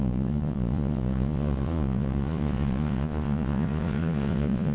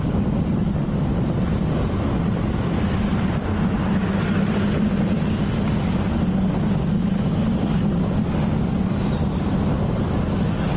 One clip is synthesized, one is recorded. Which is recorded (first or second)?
second